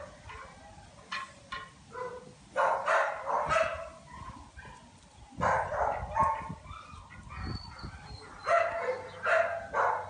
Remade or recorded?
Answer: recorded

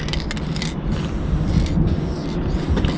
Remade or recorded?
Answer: recorded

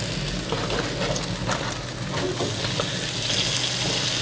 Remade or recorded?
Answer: recorded